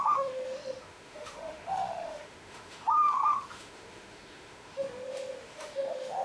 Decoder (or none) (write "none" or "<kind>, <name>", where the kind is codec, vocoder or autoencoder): autoencoder, DAC-VAE